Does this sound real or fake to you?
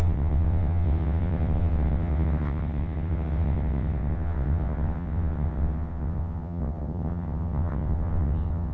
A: fake